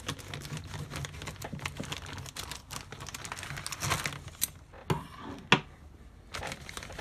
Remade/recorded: recorded